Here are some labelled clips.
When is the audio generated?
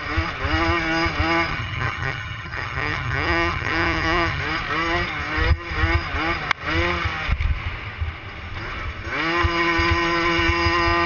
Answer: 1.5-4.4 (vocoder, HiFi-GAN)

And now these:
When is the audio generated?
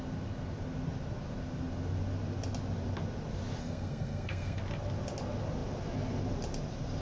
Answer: 3.6-4.6 (codec, SNAC)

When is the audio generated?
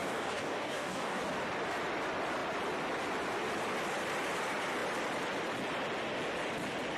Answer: 0.0-1.2 (codec, DAC)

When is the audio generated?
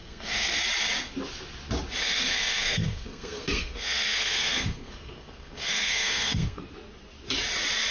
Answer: 0.0-0.6 (codec, SNAC); 2.0-6.6